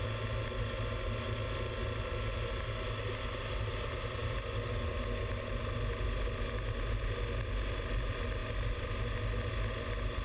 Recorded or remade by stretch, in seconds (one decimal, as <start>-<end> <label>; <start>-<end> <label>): 0.0-10.2 recorded